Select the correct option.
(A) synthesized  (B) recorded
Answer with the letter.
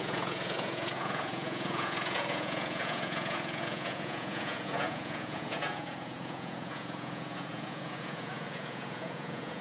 A